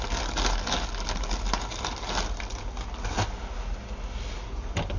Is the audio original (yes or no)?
yes